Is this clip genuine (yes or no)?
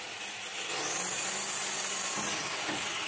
yes